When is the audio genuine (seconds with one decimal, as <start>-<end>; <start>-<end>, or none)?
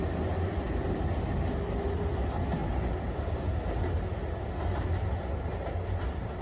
0.0-6.4